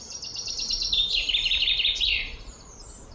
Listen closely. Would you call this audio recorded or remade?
remade